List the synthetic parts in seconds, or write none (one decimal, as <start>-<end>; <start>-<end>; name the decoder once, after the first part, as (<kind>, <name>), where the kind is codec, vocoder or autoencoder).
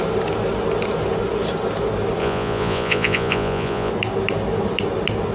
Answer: 2.2-3.9 (vocoder, Vocos)